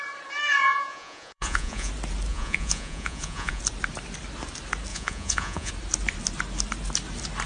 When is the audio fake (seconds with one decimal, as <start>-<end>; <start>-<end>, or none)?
0.6-1.9; 2.3-3.6; 4.9-5.7